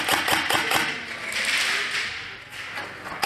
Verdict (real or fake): real